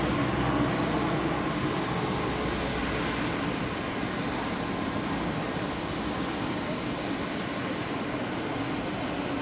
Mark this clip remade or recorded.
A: recorded